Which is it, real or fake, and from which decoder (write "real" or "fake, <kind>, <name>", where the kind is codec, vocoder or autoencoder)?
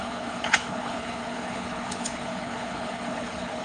fake, codec, HILCodec